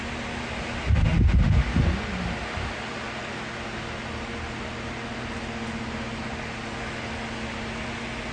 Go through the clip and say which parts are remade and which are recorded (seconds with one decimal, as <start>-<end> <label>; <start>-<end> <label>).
0.0-8.3 recorded